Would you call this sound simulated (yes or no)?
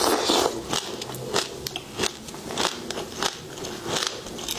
no